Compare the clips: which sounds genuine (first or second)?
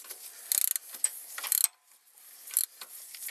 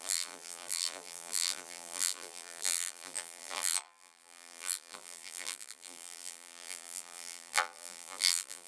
first